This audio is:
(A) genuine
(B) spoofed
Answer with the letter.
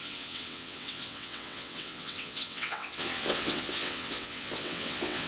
B